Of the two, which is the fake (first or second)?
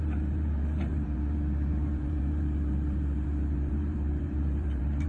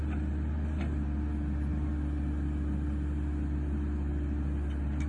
first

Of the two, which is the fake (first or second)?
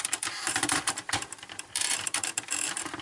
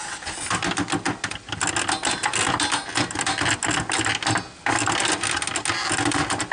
first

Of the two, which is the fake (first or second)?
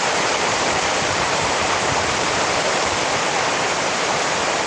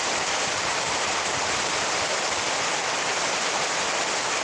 first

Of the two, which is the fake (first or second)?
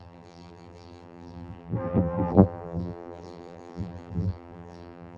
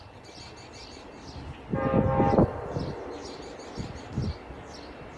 first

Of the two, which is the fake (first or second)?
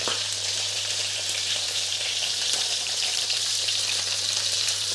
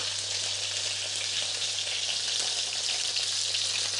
first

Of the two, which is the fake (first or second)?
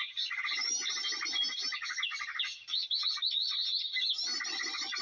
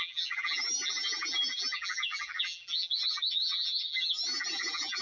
second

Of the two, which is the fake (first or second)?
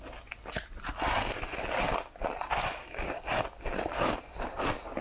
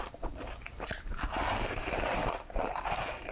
second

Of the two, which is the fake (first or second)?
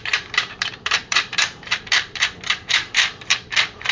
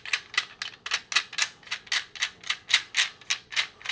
first